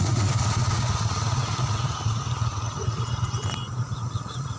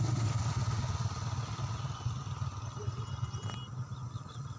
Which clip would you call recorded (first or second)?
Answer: second